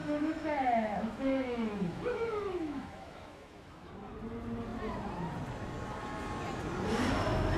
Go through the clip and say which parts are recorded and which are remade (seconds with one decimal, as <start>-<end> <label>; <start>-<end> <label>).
0.0-3.9 remade; 3.9-7.6 recorded